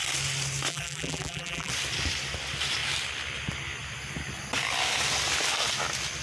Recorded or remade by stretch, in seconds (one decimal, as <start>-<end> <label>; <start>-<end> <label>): 0.0-0.7 recorded; 0.7-1.7 remade; 1.7-6.2 recorded